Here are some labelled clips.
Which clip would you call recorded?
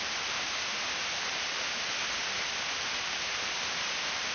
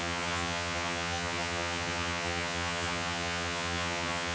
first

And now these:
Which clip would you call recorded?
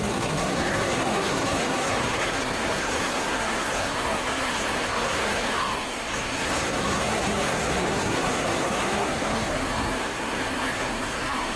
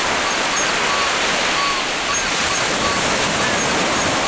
second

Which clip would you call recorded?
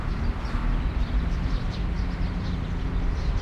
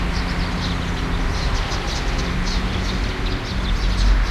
second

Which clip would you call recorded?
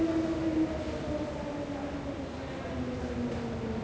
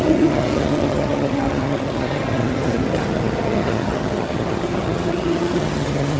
first